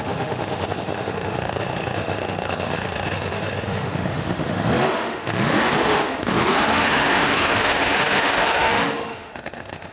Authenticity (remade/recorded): remade